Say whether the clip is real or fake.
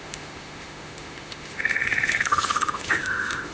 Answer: fake